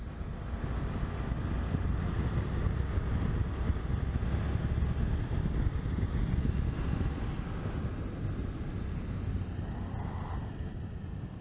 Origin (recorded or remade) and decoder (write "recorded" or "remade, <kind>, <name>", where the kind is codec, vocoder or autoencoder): recorded